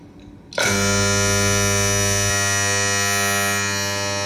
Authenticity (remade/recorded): recorded